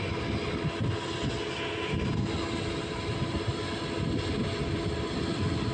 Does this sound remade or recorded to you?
recorded